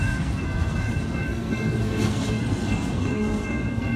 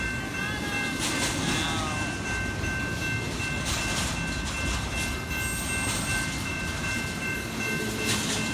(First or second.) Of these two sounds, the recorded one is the second